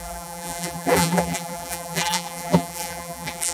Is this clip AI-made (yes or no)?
yes